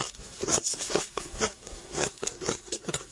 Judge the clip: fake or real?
fake